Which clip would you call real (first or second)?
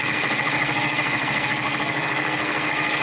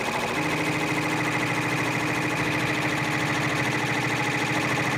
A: second